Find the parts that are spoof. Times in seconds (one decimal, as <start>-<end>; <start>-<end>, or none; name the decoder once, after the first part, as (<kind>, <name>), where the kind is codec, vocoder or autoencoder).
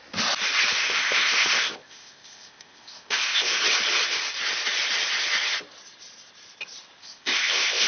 0.8-3.6 (codec, ZipCodec); 7.0-7.9